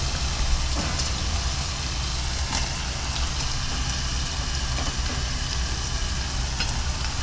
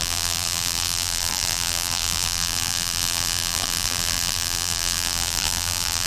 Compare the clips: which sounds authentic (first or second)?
first